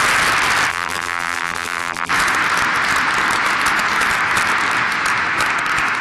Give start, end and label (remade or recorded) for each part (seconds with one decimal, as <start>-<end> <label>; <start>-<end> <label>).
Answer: 0.0-0.7 recorded; 0.7-2.1 remade; 2.1-6.0 recorded